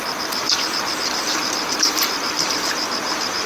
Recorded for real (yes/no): yes